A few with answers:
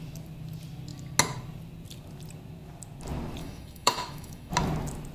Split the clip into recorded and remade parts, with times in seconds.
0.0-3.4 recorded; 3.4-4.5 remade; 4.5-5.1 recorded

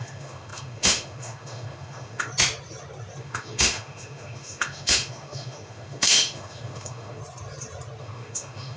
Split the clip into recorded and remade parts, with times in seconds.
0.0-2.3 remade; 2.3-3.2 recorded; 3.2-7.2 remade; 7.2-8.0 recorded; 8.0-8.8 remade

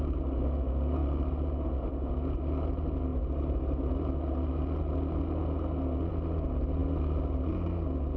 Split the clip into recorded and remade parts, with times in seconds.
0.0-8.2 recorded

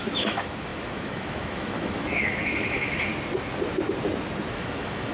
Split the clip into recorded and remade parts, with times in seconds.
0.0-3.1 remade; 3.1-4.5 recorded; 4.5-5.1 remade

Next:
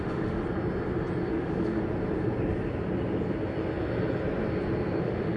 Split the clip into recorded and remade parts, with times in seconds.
0.0-0.4 remade; 0.4-1.3 recorded; 1.3-1.8 remade; 1.8-5.0 recorded; 5.0-5.4 remade